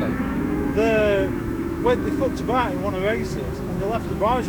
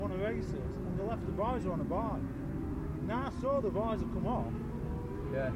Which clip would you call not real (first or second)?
first